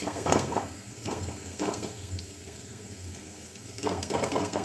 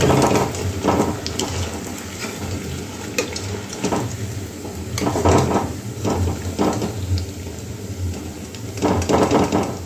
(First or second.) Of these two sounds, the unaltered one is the second